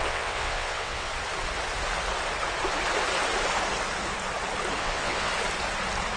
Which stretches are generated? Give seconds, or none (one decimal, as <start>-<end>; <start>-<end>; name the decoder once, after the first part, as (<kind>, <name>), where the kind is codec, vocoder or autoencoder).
0.0-1.1 (vocoder, WaveNeXt); 4.8-5.3